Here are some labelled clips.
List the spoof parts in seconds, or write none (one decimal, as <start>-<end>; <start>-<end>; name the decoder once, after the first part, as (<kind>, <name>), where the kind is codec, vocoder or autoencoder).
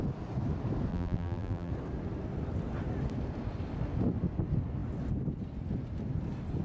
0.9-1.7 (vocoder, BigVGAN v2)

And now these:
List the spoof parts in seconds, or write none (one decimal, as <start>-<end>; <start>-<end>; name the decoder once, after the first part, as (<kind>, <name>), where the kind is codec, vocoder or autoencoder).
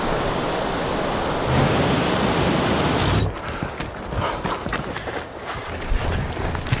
none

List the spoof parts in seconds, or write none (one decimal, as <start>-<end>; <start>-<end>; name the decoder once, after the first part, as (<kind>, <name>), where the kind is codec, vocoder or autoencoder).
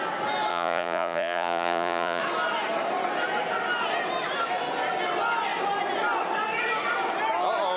0.5-2.2 (vocoder, Vocos)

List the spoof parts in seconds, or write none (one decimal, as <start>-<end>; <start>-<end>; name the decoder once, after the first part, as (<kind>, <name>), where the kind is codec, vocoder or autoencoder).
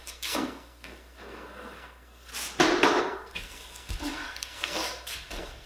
0.0-2.3 (codec, SNAC); 3.0-5.7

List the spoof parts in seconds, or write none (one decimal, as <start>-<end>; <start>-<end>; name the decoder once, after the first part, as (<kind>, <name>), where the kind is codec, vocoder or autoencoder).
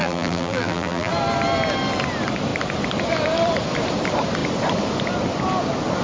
0.0-1.1 (vocoder, BigVGAN v2)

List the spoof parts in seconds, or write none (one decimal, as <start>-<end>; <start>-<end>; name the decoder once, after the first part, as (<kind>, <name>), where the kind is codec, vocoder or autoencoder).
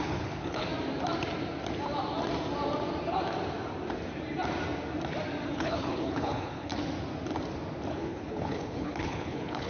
0.0-0.7 (codec, HILCodec); 5.5-6.7; 7.9-9.7